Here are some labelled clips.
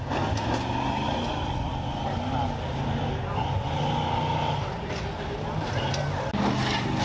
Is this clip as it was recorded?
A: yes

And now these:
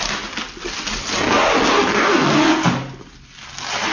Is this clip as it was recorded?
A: yes